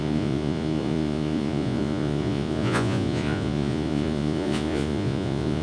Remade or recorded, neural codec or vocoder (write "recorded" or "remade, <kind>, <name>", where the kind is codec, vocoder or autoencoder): remade, vocoder, Vocos